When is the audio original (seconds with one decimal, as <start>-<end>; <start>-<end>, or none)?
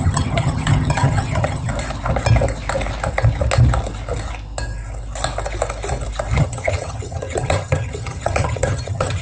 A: 1.7-6.4